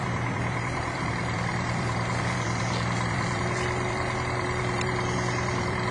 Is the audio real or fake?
fake